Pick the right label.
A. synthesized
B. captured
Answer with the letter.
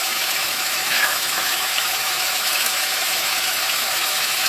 A